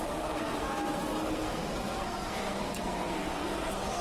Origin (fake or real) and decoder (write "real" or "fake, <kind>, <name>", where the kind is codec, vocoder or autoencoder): fake, codec, SNAC